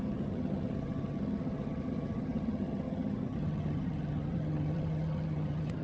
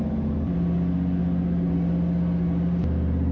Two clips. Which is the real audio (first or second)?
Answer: second